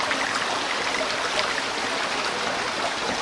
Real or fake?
real